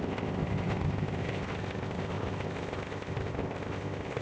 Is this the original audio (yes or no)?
no